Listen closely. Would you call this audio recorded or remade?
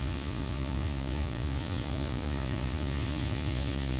remade